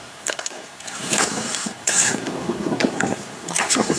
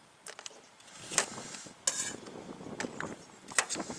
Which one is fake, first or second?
first